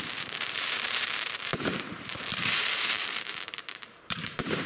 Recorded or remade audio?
remade